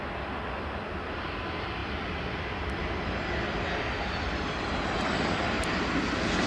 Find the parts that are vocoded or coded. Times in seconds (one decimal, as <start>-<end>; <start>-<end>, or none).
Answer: none